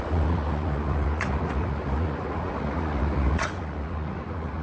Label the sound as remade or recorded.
remade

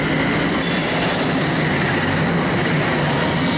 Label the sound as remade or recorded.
recorded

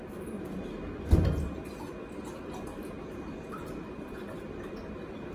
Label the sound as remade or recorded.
recorded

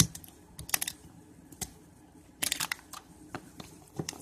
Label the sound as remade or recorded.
remade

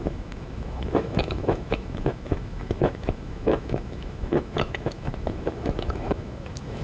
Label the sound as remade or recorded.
remade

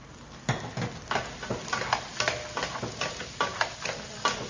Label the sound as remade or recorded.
recorded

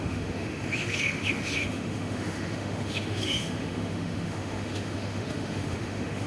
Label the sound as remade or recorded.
remade